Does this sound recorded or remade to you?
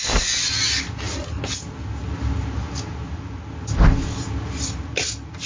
recorded